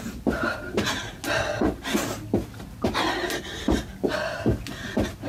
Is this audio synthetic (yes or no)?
no